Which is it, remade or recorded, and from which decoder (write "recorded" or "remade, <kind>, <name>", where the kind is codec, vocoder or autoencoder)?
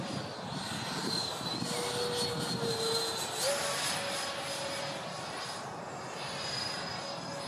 recorded